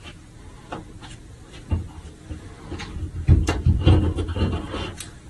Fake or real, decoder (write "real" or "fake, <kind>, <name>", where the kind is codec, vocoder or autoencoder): real